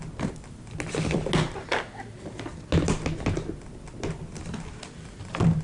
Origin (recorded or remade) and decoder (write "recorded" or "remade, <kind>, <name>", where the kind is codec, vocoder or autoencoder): recorded